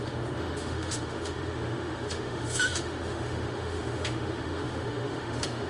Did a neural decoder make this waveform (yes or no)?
yes